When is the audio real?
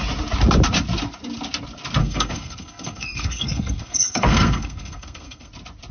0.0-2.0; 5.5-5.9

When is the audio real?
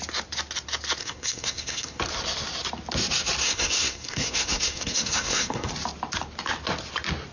0.0-1.0; 2.0-3.4; 5.7-7.3